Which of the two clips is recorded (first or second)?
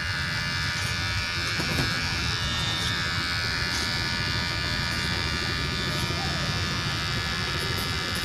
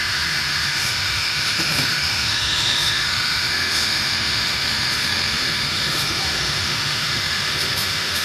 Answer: first